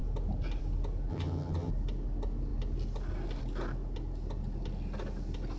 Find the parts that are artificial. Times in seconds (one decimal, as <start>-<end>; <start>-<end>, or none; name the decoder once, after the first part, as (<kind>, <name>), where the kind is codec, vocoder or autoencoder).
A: 1.1-1.7 (vocoder, HiFi-GAN)